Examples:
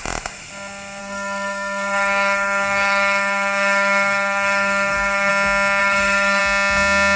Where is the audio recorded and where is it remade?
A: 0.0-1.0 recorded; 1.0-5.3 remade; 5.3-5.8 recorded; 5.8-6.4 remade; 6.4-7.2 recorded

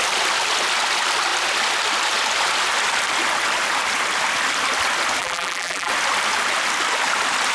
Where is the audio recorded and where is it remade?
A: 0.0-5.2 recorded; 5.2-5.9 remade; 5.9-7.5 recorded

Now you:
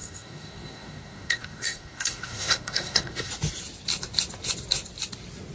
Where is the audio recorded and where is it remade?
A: 0.0-3.3 remade; 3.3-5.5 recorded